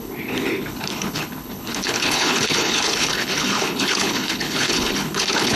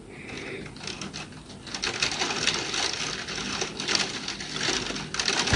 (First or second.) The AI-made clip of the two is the first